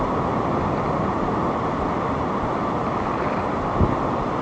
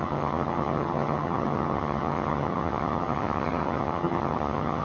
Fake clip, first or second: second